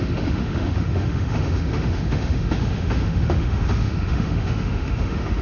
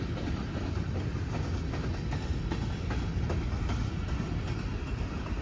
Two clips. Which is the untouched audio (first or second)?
second